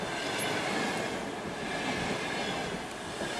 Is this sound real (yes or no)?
yes